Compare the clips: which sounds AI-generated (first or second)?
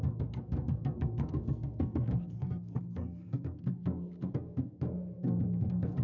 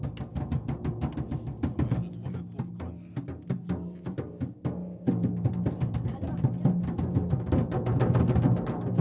first